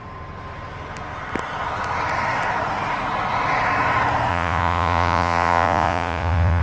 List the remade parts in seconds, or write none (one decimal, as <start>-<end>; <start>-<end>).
4.3-6.6